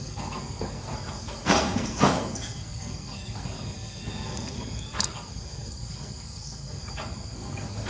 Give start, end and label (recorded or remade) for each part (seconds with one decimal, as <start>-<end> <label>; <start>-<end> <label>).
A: 0.0-7.9 remade